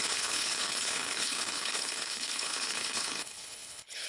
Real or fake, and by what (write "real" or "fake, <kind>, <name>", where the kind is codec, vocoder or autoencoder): fake, codec, HILCodec